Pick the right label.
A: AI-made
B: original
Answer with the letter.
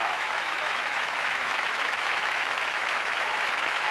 A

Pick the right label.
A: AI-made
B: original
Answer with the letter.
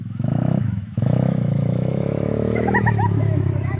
A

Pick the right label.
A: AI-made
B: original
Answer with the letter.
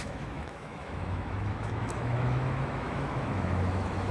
A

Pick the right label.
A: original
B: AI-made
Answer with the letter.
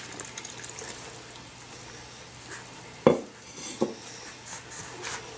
A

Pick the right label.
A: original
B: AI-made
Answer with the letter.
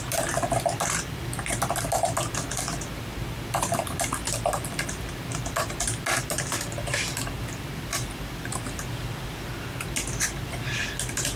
A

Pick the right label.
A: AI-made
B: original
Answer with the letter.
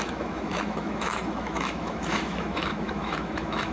A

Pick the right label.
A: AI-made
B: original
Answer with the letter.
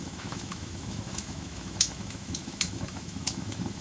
A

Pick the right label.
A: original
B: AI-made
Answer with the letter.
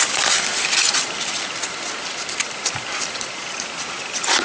A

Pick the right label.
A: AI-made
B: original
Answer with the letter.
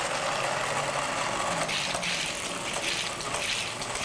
B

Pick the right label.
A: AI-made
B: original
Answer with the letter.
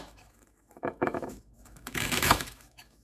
A